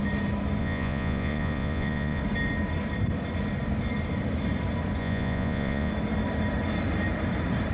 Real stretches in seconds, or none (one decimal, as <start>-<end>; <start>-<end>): 0.0-0.6; 2.2-5.0; 5.9-7.7